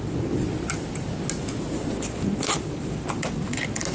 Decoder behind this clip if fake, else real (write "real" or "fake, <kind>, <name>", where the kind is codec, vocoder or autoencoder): real